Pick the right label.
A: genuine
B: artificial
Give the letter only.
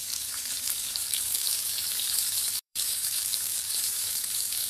B